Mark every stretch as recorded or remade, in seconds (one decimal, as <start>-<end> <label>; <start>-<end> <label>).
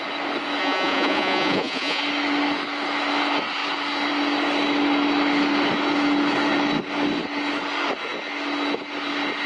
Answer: 0.0-0.6 recorded; 0.6-2.0 remade; 2.0-9.5 recorded